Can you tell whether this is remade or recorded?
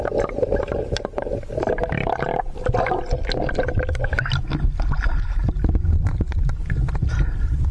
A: recorded